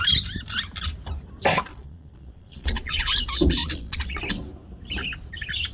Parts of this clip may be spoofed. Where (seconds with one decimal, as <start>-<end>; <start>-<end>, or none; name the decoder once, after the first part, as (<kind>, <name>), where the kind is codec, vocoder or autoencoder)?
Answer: 1.7-3.1 (vocoder, Vocos); 3.6-4.2